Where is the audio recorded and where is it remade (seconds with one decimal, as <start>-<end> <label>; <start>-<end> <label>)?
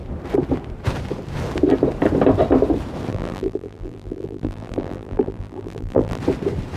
0.0-3.1 recorded; 3.1-6.2 remade; 6.2-6.8 recorded